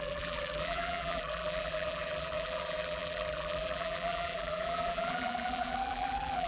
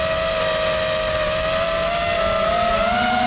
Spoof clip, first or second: first